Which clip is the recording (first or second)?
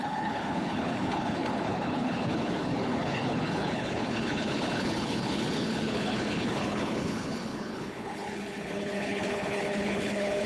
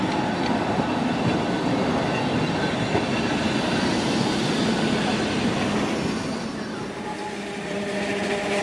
second